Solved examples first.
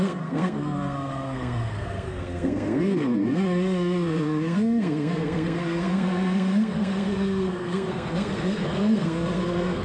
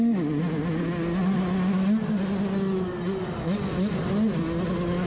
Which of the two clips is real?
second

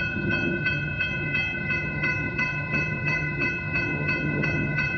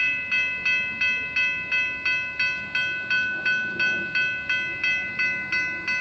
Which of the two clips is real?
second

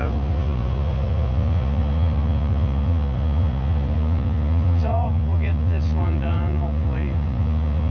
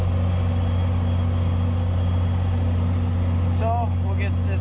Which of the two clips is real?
second